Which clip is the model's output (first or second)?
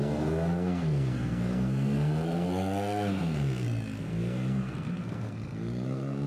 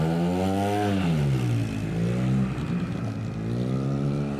first